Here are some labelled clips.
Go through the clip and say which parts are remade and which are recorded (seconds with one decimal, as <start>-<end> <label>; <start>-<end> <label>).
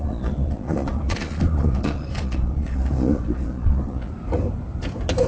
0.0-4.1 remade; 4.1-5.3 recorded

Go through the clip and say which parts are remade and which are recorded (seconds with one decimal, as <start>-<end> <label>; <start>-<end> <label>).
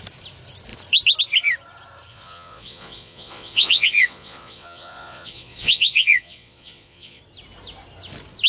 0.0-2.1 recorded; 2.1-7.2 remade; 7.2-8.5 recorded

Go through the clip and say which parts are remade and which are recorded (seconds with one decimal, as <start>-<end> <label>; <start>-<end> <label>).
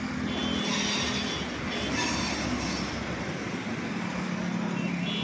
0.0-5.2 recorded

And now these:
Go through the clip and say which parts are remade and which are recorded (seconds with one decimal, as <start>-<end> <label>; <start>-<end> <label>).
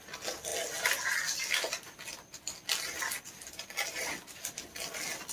0.0-5.3 recorded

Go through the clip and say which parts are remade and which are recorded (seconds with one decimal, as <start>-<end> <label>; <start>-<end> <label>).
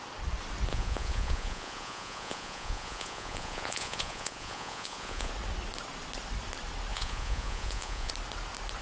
0.0-0.7 recorded; 0.7-5.3 remade; 5.3-6.9 recorded; 6.9-8.1 remade; 8.1-8.8 recorded